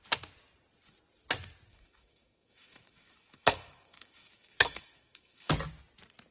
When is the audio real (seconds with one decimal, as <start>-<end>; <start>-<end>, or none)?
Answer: 0.0-1.7; 5.5-6.3